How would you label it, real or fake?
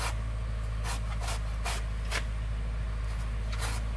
real